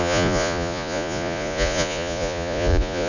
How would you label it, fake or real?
fake